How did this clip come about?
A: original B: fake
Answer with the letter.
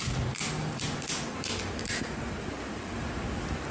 A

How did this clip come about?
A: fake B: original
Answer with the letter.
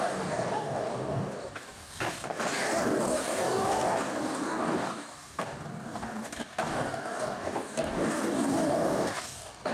A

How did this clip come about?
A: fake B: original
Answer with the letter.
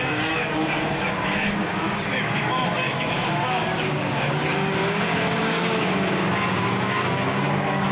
A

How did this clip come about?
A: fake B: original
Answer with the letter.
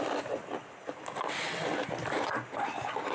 B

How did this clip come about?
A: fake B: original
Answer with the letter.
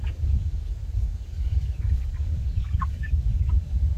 A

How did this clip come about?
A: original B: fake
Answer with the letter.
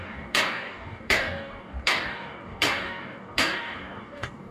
B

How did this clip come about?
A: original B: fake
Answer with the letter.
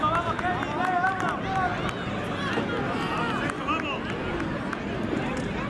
A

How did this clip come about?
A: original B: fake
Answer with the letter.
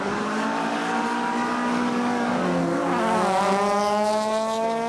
B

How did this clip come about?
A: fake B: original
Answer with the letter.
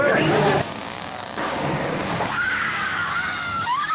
A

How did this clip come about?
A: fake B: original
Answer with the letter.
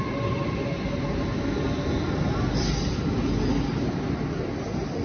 B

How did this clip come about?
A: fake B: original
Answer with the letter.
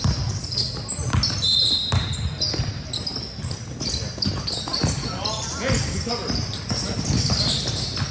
B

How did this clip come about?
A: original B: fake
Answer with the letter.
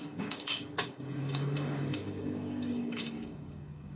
B